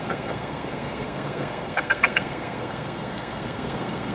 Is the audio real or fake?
fake